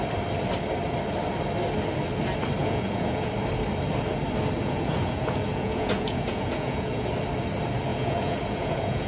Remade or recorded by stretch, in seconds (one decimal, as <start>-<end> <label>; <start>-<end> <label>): 0.0-2.6 recorded; 2.6-3.3 remade; 3.3-4.6 recorded; 4.6-7.1 remade; 7.1-7.9 recorded; 7.9-9.1 remade